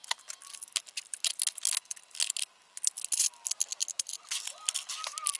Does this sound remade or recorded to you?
recorded